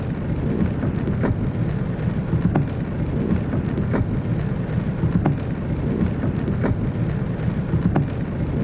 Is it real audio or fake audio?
real